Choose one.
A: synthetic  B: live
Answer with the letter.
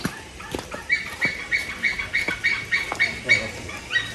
B